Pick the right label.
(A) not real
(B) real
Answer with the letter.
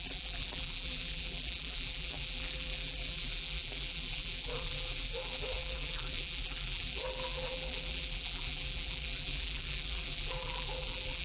A